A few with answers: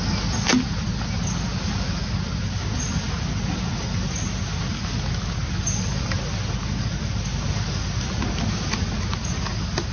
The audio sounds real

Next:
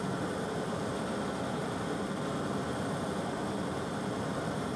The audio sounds real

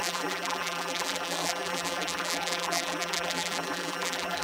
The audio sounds fake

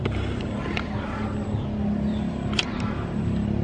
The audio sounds real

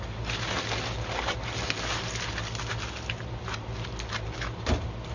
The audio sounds real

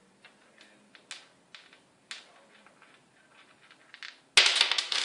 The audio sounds real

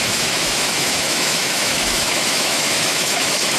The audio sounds fake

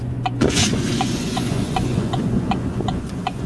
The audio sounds fake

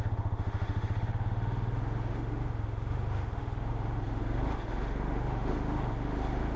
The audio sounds fake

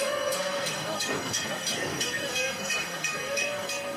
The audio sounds fake